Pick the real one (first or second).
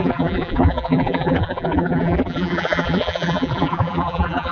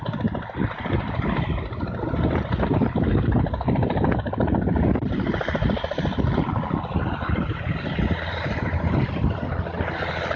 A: second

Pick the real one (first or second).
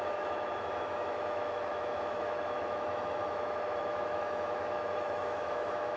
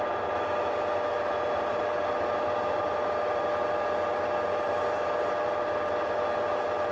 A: second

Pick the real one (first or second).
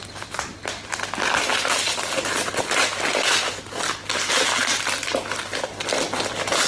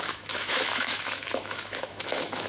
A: first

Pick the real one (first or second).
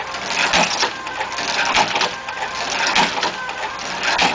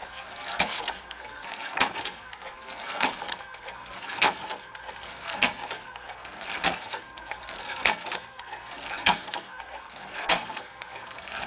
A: first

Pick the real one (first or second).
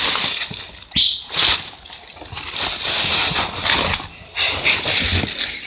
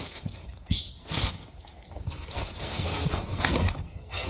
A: first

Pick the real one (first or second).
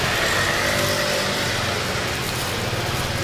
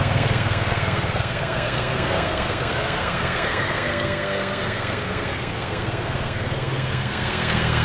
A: first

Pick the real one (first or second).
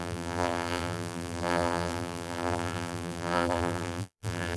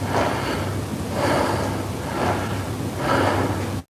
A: second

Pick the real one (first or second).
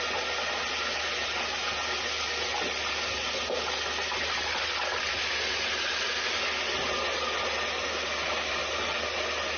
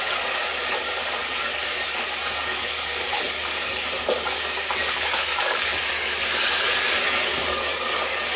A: first